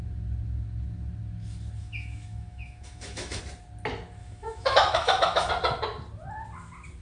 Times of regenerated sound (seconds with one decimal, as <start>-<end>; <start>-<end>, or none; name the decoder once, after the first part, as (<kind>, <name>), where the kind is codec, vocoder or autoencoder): 1.8-3.4 (autoencoder, DAC-VAE); 4.2-5.5